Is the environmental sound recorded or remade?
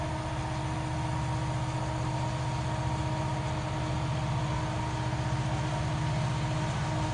recorded